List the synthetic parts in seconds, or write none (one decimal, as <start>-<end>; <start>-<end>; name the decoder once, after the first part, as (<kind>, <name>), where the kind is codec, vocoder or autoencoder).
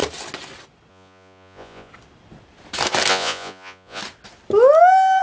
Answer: 0.9-1.9 (vocoder, Vocos); 3.1-4.0